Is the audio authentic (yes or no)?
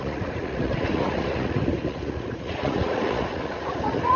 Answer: no